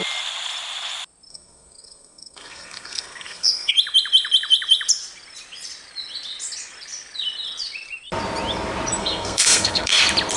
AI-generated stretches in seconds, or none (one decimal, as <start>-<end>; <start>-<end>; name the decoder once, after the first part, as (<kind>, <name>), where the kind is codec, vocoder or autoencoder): 1.3-3.7 (codec, SNAC); 9.0-10.0